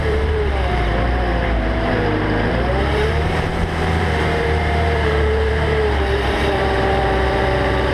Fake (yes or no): yes